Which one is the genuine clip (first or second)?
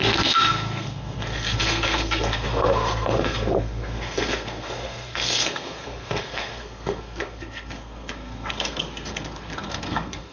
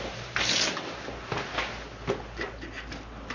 second